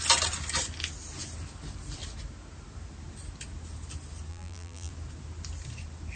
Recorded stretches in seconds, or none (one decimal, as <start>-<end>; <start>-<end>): 0.0-4.3; 4.9-6.2